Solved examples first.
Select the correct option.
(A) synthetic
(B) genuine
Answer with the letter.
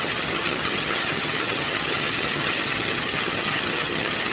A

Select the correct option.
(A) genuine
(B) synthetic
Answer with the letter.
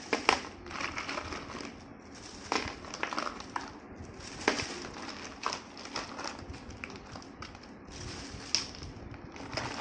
A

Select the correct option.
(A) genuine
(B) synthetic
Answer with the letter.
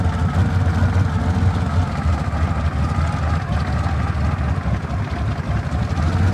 A